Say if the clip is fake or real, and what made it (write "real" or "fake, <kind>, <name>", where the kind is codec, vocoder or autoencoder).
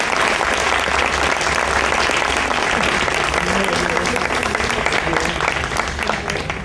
real